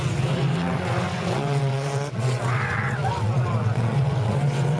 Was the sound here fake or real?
fake